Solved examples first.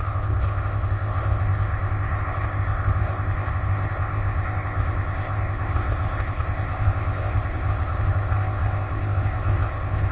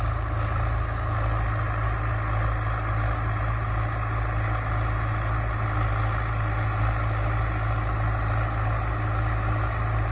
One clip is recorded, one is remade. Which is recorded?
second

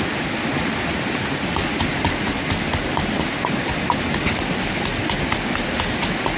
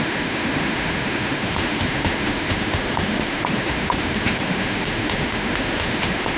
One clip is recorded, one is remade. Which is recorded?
first